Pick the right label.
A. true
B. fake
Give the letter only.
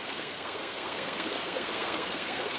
B